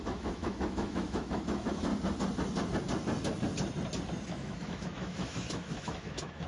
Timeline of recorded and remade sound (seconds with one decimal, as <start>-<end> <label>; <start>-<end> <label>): 0.0-1.9 remade; 1.9-4.3 recorded; 4.3-6.5 remade